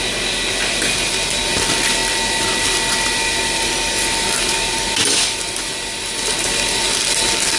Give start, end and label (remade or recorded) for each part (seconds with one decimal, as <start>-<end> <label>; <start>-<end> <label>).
0.0-7.6 recorded